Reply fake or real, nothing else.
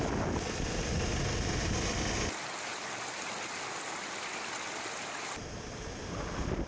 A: real